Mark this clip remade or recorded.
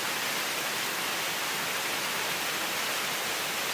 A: remade